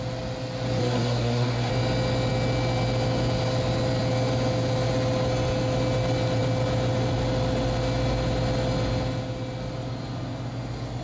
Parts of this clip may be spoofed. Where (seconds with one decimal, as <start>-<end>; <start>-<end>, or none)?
0.8-1.7